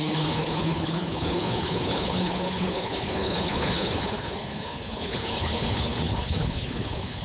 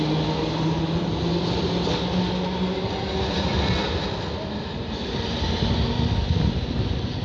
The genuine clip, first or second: second